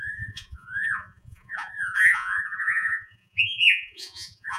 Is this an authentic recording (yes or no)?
no